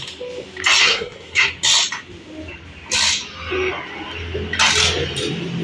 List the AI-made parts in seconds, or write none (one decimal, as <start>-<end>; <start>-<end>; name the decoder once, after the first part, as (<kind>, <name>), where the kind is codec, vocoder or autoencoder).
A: 0.8-1.5 (codec, SNAC)